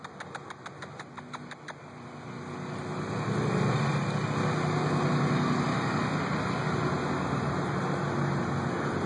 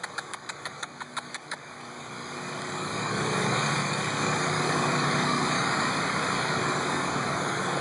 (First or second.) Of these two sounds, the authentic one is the first